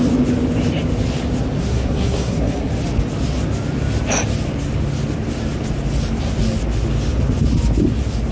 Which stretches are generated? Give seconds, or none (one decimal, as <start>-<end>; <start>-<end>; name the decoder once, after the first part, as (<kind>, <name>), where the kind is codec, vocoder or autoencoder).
1.6-2.7 (codec, SNAC)